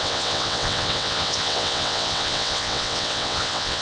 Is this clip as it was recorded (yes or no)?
no